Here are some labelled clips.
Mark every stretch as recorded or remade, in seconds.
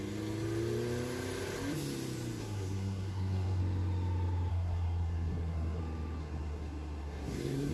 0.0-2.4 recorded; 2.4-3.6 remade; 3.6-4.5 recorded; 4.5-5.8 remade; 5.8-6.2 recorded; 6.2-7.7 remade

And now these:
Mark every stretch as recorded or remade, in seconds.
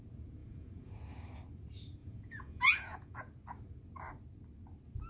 0.0-0.4 recorded; 0.4-0.9 remade; 0.9-2.0 recorded; 2.0-3.2 remade; 3.2-5.1 recorded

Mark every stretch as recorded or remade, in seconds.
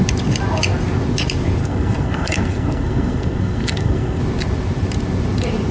0.0-1.6 recorded; 1.6-4.2 remade; 4.2-5.7 recorded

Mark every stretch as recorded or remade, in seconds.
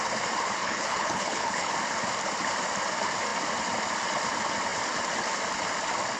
0.0-0.6 recorded; 0.6-1.7 remade; 1.7-6.2 recorded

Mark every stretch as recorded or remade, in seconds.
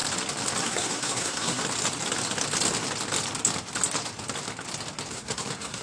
0.0-0.6 recorded; 0.6-1.6 remade; 1.6-5.1 recorded; 5.1-5.8 remade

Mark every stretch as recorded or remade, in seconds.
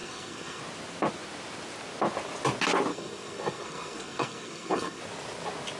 0.0-0.6 remade; 0.6-2.9 recorded; 2.9-5.0 remade; 5.0-5.8 recorded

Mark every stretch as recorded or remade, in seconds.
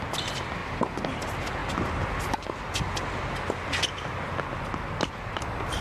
0.0-5.8 recorded